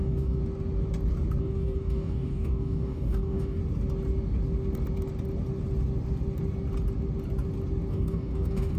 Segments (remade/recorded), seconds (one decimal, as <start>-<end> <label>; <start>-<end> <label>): 0.0-0.4 remade; 0.4-1.4 recorded; 1.4-3.6 remade; 3.6-7.9 recorded; 7.9-8.8 remade